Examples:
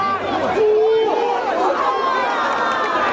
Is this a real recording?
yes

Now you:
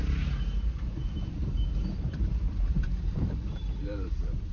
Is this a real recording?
no